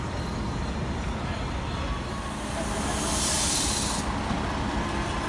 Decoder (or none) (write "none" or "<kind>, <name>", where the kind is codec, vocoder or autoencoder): none